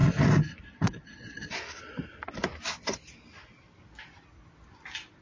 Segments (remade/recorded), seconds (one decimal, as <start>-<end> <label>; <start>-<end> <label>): 0.0-5.2 recorded